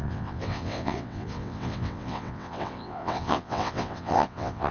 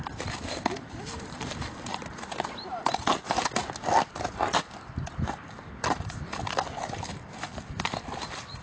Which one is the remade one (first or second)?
first